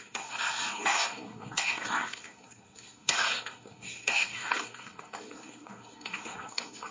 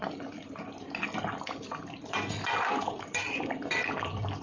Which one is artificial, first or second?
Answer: first